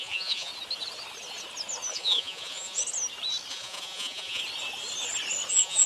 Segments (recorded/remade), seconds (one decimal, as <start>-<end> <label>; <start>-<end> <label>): 0.0-0.5 remade; 0.5-1.9 recorded; 1.9-2.8 remade; 2.8-3.5 recorded; 3.5-4.4 remade; 4.4-5.5 recorded; 5.5-5.9 remade